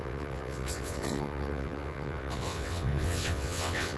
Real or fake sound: fake